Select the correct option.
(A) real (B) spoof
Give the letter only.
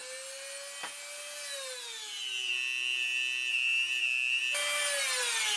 A